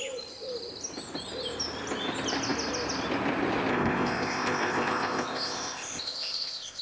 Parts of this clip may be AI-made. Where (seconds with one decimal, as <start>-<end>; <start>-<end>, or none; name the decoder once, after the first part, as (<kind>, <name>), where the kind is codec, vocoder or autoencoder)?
3.7-6.8 (codec, ZipCodec)